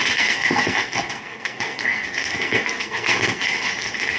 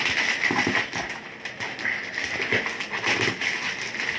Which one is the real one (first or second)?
second